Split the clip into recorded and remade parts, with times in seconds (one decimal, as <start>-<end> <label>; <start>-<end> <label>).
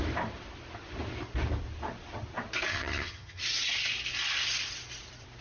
0.0-2.7 recorded; 2.7-3.4 remade; 3.4-5.4 recorded